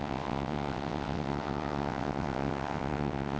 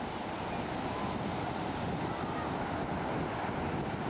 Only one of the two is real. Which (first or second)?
second